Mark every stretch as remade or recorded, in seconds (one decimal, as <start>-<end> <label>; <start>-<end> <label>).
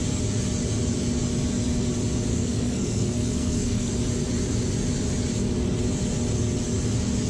0.0-2.3 recorded; 2.3-3.9 remade; 3.9-7.3 recorded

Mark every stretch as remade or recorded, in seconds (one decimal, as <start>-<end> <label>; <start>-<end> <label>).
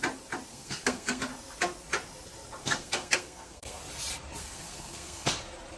0.0-0.5 recorded; 0.5-1.2 remade; 1.2-2.6 recorded; 2.6-3.8 remade; 3.8-4.4 recorded; 4.4-5.3 remade; 5.3-5.8 recorded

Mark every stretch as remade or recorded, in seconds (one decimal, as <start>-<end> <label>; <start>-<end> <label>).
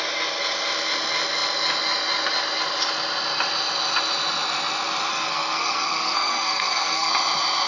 0.0-5.1 recorded; 5.1-7.1 remade; 7.1-7.7 recorded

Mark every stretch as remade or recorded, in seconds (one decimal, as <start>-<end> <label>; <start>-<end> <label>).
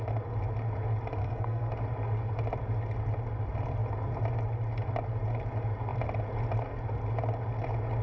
0.0-1.2 recorded; 1.2-1.7 remade; 1.7-8.0 recorded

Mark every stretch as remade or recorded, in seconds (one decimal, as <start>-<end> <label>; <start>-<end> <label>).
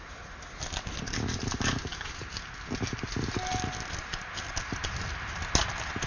0.0-6.1 recorded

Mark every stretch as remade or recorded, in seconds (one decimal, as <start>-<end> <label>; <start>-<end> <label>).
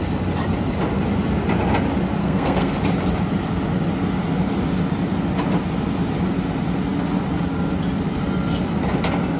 0.0-2.2 recorded; 2.2-2.7 remade; 2.7-9.4 recorded